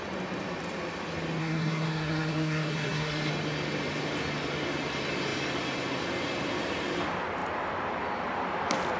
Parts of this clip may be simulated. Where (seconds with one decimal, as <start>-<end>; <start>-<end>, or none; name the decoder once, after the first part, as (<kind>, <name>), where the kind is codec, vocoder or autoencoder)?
1.4-3.3 (codec, SNAC)